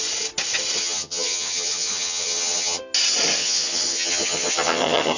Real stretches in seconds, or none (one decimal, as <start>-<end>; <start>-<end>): 0.0-0.8; 2.8-3.4